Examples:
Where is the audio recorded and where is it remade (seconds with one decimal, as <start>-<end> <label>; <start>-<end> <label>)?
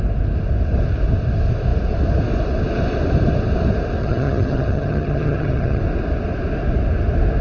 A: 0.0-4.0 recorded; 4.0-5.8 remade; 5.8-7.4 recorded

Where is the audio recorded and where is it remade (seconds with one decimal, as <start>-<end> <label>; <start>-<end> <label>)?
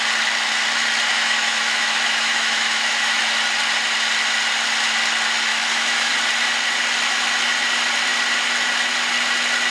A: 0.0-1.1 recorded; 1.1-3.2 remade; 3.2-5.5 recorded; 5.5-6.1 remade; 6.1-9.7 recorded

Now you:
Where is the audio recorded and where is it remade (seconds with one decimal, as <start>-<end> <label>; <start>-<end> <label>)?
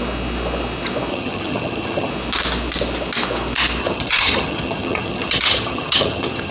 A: 0.0-1.1 recorded; 1.1-2.1 remade; 2.1-3.8 recorded; 3.8-6.5 remade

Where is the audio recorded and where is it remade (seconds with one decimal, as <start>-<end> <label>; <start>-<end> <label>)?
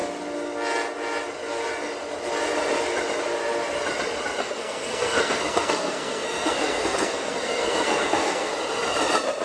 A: 0.0-4.4 recorded; 4.4-8.5 remade; 8.5-9.4 recorded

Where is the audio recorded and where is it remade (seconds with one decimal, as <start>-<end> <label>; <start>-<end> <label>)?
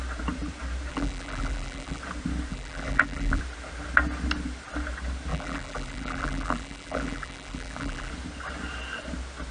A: 0.0-0.9 recorded; 0.9-2.0 remade; 2.0-2.5 recorded; 2.5-3.4 remade; 3.4-5.3 recorded; 5.3-8.1 remade; 8.1-9.5 recorded